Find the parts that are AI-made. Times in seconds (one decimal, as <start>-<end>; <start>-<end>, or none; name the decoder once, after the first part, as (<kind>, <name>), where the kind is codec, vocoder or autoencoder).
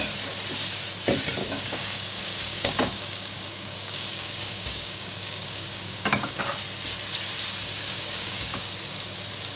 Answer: 1.4-6.4 (codec, DAC); 7.7-8.7